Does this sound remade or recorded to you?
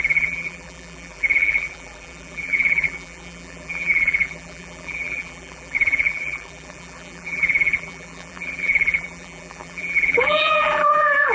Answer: remade